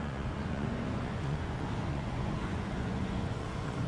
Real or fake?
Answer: fake